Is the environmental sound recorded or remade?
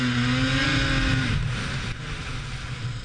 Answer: recorded